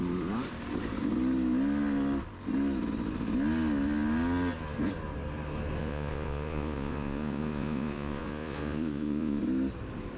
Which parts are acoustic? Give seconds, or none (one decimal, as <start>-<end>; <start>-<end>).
0.0-5.8; 9.4-10.2